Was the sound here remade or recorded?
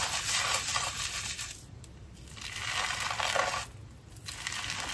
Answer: recorded